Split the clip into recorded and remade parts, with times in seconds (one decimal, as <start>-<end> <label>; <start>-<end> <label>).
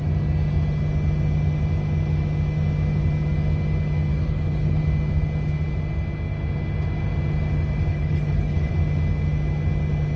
0.0-4.1 recorded; 4.1-4.8 remade; 4.8-7.9 recorded; 7.9-8.7 remade; 8.7-10.2 recorded